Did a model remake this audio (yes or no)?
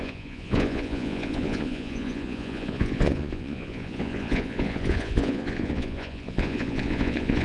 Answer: yes